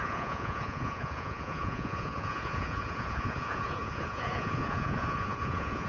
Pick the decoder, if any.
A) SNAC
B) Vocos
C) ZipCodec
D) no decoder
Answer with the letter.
B